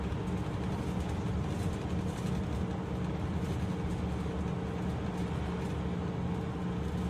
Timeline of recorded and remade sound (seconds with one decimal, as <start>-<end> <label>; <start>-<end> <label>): 0.0-7.1 recorded